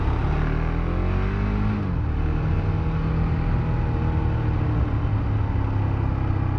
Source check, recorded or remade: recorded